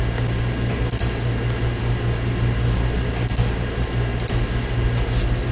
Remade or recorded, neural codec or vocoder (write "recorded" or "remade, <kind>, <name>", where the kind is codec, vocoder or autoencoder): recorded